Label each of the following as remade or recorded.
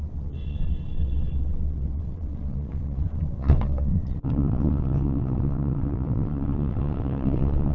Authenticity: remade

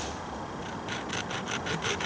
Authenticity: recorded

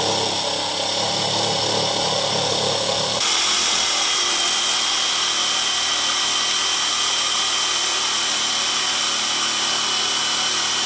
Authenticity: recorded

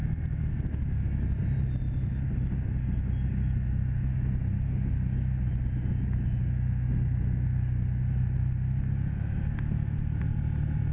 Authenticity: recorded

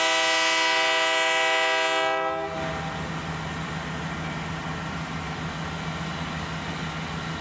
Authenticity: recorded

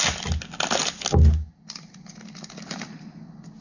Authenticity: recorded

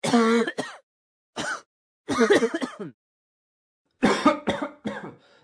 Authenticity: recorded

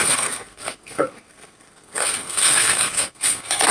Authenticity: remade